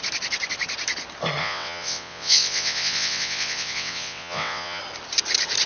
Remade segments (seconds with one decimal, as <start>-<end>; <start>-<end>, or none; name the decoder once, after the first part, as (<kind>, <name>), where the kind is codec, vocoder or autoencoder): 1.4-4.8 (vocoder, WaveNeXt)